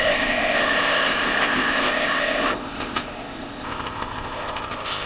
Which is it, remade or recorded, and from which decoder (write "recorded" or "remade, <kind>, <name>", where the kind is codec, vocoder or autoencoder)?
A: remade, codec, ZipCodec